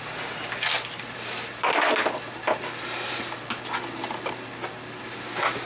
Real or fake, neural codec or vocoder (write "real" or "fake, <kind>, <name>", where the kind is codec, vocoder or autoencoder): real